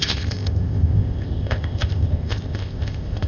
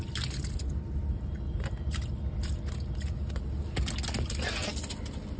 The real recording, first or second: second